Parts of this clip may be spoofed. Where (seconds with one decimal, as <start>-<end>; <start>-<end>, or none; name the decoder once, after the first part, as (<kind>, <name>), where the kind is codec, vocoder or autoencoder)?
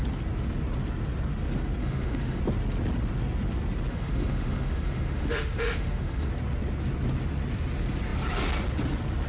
1.8-2.4 (autoencoder, DAC-VAE); 3.9-6.3